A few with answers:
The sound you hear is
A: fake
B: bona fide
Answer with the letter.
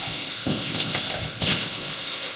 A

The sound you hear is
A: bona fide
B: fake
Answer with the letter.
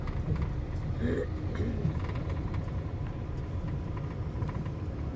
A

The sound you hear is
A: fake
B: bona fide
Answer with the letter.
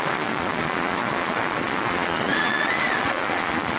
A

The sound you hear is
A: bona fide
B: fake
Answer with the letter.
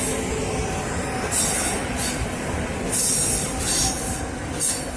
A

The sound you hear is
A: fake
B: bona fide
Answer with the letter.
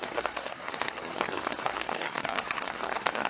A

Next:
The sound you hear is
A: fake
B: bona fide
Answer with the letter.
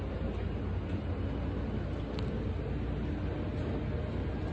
B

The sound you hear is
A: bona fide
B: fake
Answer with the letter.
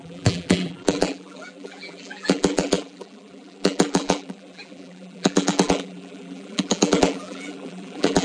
B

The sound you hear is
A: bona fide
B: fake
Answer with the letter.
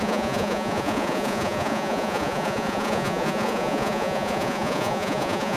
B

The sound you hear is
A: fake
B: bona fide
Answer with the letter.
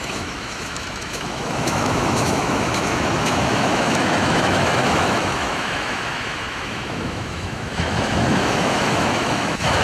A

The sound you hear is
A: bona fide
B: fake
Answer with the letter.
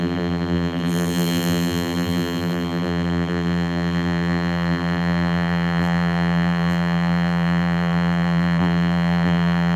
B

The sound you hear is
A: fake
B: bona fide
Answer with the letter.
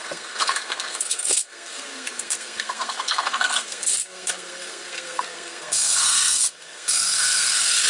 A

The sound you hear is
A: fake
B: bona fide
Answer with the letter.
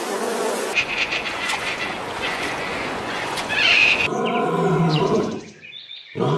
A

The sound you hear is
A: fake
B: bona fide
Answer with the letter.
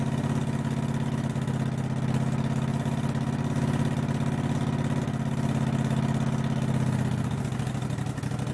B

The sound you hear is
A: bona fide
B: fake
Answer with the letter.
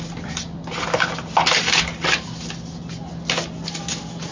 A